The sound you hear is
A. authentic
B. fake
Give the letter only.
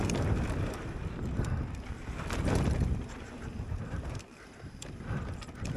A